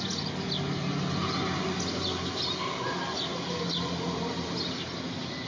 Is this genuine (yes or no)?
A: yes